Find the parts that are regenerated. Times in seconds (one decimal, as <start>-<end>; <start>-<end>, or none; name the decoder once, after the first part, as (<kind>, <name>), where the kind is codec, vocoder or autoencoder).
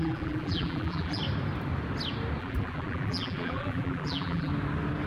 0.0-1.2 (vocoder, BigVGAN v2); 2.4-4.5